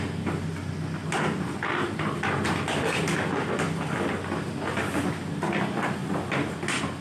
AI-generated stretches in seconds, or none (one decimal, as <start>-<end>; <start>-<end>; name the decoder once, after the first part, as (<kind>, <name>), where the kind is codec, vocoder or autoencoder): 1.0-5.0 (vocoder, BigVGAN v2)